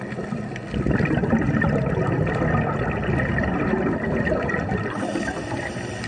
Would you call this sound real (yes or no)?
yes